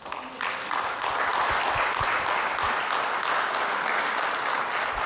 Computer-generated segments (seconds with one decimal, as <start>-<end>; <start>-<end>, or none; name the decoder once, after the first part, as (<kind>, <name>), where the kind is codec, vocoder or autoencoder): none

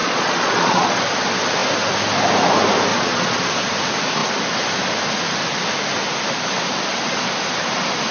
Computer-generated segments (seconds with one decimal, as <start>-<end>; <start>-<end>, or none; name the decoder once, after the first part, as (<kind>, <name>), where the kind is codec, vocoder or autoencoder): 0.0-1.0 (vocoder, Vocos); 2.9-3.7

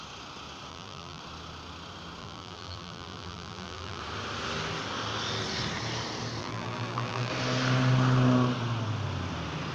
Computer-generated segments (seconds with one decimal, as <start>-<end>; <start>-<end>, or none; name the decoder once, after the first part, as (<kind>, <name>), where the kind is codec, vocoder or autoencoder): 0.7-1.2 (vocoder, BigVGAN v2); 2.2-4.0; 6.4-7.3

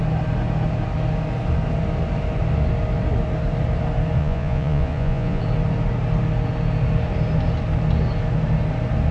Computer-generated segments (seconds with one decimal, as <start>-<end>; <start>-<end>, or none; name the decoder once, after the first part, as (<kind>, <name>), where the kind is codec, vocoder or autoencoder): 4.2-5.4 (vocoder, Vocos)

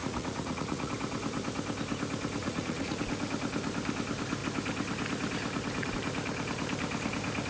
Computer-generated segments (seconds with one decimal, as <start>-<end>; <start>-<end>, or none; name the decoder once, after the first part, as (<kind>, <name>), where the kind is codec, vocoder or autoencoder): 0.0-0.9 (vocoder, Vocos); 2.4-3.0

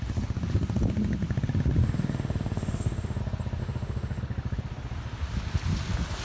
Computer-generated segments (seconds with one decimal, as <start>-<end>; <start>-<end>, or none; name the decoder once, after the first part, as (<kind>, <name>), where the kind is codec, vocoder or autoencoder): 1.8-3.2 (autoencoder, DAC-VAE); 3.6-4.2